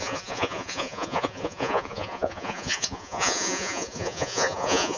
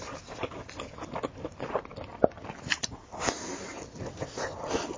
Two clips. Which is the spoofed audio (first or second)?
first